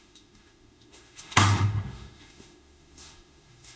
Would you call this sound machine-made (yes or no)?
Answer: yes